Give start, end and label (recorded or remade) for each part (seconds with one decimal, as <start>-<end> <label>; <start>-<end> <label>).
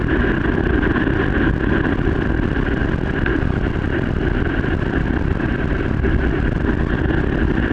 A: 0.0-7.7 remade